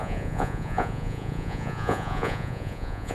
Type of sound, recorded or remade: remade